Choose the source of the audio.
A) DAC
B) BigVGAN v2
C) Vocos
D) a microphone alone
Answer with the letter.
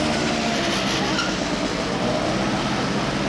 D